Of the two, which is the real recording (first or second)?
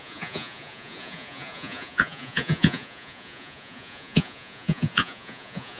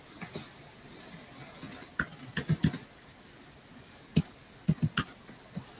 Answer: second